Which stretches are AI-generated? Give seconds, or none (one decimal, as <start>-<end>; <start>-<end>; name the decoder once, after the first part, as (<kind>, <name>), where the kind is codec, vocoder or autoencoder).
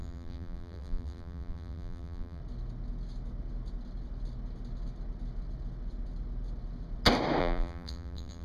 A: 0.0-2.4 (vocoder, BigVGAN v2); 7.4-8.4